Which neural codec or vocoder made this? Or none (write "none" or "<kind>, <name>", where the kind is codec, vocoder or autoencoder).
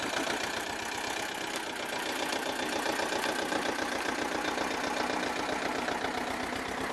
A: none